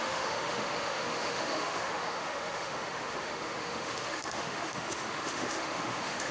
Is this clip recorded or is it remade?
remade